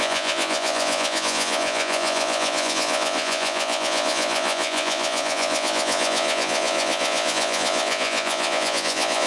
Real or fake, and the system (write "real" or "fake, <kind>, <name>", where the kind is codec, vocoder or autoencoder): fake, vocoder, Vocos